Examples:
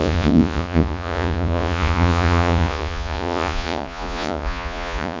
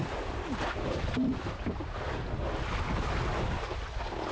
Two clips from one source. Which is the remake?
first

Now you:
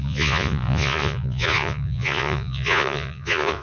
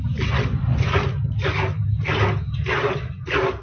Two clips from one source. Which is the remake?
first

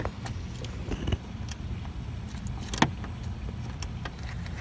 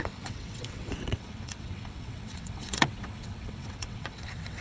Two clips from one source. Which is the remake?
second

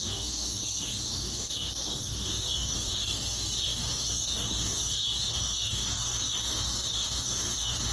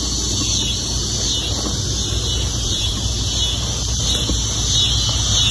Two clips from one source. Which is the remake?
first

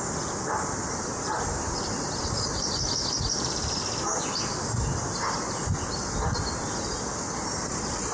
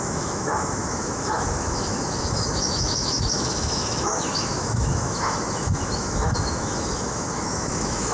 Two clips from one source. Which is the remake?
second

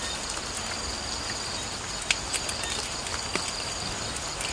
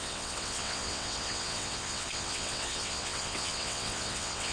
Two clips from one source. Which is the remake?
second